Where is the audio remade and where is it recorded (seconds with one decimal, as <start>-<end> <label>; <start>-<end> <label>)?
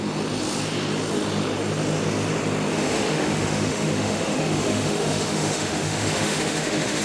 0.0-2.7 recorded; 2.7-7.0 remade